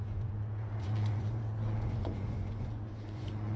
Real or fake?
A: fake